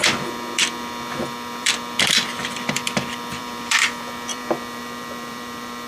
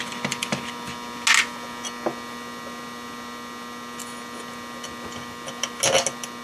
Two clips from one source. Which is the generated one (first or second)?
first